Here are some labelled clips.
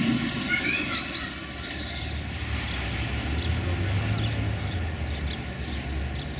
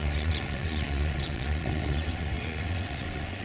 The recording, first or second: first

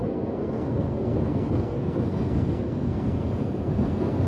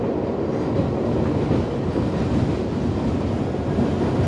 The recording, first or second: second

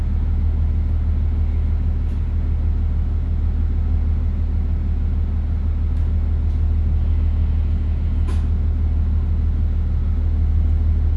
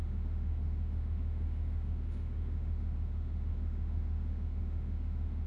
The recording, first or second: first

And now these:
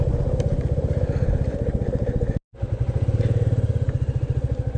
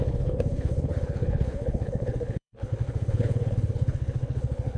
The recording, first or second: first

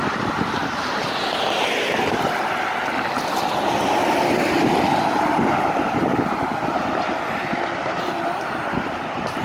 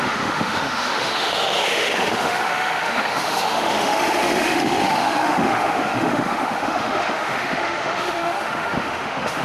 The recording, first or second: first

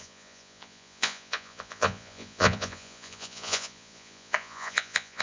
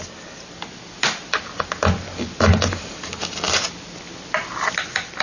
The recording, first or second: second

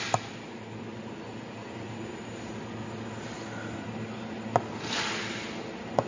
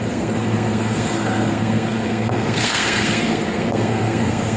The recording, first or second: first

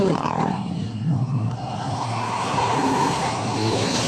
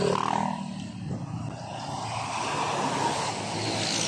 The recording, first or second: second